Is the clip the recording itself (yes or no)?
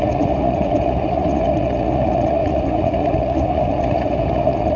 no